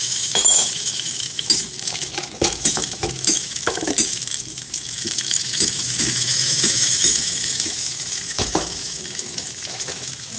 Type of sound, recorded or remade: remade